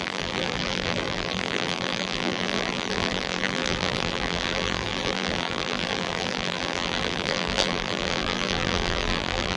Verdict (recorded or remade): remade